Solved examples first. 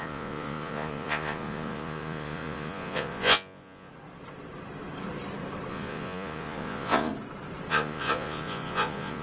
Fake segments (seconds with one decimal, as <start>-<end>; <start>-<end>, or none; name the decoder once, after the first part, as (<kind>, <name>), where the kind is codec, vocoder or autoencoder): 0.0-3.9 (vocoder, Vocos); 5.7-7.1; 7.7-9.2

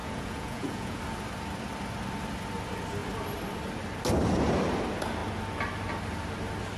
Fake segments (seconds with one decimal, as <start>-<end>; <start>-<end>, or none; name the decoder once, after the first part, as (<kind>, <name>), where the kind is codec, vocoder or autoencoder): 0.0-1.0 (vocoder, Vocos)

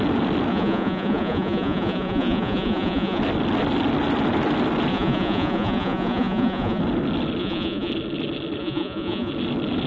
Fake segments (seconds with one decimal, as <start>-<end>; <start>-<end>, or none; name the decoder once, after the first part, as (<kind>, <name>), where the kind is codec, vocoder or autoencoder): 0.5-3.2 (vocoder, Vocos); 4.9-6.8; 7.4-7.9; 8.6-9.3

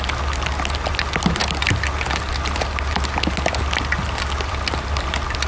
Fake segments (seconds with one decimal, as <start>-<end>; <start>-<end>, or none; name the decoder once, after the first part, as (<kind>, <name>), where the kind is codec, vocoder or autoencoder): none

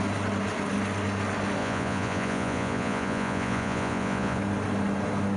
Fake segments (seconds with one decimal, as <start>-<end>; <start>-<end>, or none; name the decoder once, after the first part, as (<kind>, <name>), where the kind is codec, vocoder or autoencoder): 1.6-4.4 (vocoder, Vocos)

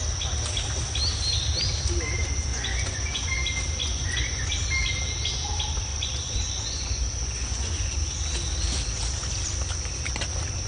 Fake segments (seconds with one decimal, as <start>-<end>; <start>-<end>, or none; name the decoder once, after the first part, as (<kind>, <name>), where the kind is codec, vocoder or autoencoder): 2.5-3.3 (vocoder, Vocos); 3.8-4.5; 5.9-8.0